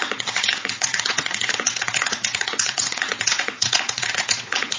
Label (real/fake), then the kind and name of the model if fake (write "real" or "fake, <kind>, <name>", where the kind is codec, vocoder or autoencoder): fake, vocoder, WaveNeXt